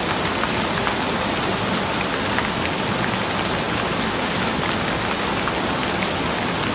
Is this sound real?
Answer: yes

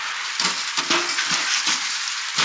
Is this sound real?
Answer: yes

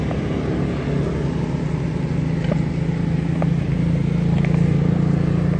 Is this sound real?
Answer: yes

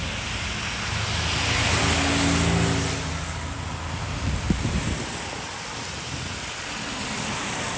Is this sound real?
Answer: yes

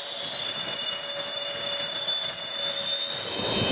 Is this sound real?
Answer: yes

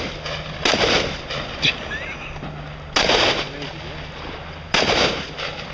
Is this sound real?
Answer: yes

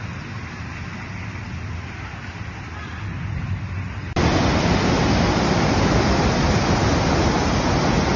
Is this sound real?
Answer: yes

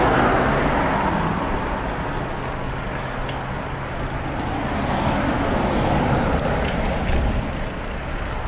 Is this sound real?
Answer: yes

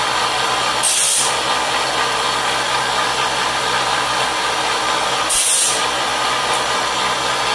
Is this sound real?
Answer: yes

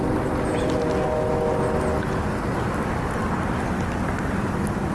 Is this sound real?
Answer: yes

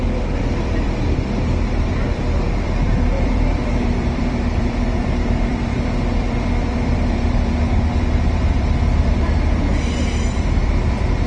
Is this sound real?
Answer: no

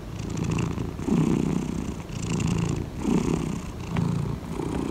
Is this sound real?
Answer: yes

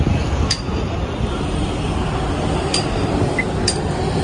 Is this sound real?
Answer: yes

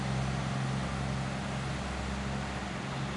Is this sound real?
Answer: yes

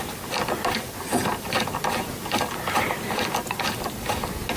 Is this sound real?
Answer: yes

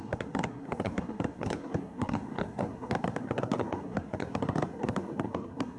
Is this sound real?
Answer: no